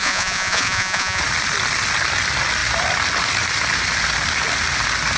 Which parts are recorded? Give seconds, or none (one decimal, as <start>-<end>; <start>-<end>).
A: 1.2-5.2